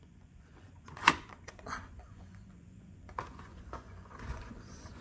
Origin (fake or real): fake